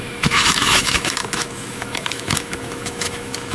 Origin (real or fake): fake